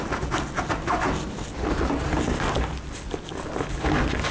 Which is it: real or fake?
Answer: real